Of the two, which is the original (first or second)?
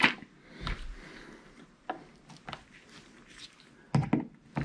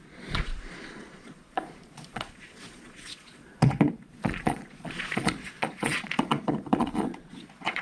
first